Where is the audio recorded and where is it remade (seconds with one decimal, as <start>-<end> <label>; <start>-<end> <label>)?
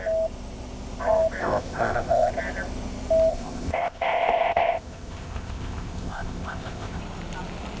0.0-1.4 recorded; 1.4-2.3 remade; 2.3-3.3 recorded; 3.3-7.0 remade; 7.0-7.8 recorded